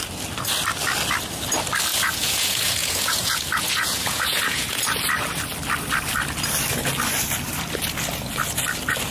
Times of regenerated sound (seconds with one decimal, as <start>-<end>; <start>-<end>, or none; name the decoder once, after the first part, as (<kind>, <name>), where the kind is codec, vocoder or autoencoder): 1.9-4.8 (vocoder, Vocos)